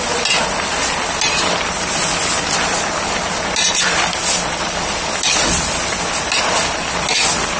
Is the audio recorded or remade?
recorded